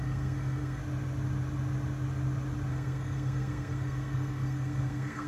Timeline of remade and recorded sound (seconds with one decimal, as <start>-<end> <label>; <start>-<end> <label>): 0.0-0.8 remade; 0.8-2.7 recorded; 2.7-5.3 remade